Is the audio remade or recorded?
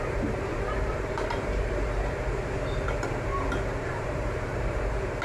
remade